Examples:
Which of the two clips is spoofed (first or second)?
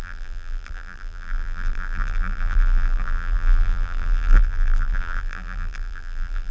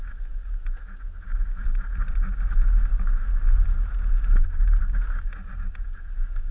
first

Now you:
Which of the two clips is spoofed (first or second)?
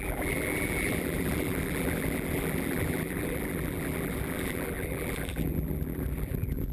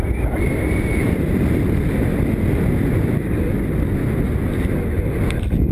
first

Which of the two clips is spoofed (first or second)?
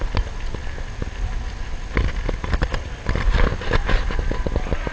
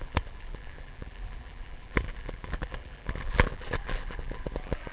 second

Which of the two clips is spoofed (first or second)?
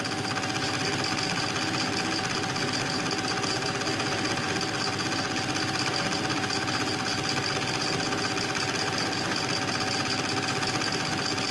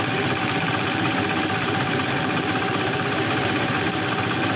second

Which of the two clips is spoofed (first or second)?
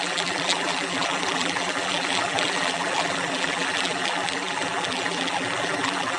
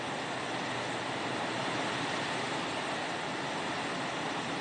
first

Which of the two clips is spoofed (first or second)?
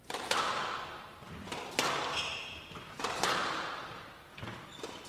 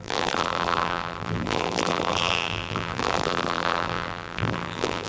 second